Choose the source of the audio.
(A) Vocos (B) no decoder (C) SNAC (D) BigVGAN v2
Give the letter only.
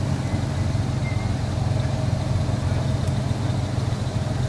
B